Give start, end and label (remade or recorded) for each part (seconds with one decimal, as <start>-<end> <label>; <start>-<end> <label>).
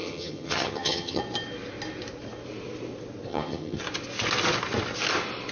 0.0-1.2 remade; 1.2-3.3 recorded; 3.3-3.8 remade; 3.8-5.5 recorded